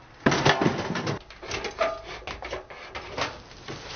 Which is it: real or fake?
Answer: real